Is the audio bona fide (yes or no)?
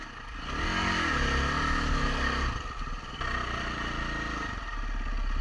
yes